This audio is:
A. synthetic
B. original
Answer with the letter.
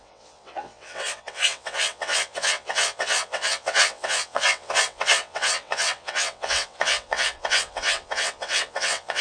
A